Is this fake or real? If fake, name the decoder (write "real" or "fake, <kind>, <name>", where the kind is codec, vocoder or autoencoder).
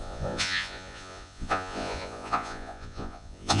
fake, vocoder, Vocos